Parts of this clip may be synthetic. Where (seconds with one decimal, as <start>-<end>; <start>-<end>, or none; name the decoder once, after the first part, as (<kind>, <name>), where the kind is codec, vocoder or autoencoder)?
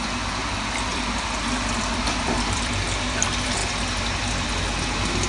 0.0-3.6 (vocoder, BigVGAN v2)